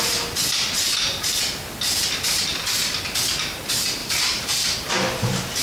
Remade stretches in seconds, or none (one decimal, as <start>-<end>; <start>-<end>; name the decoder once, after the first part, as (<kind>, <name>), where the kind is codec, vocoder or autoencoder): 4.0-4.9 (vocoder, BigVGAN v2)